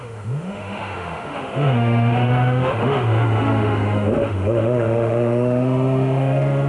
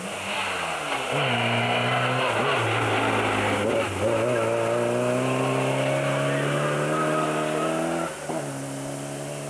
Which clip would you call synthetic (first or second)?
first